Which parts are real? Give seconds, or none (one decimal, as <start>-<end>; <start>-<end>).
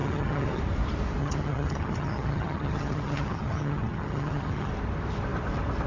0.6-1.2; 4.7-5.9